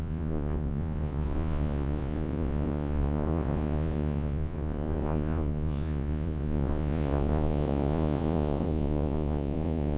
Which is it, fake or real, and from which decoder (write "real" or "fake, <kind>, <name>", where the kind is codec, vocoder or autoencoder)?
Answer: fake, vocoder, Vocos